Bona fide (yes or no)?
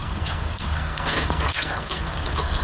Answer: no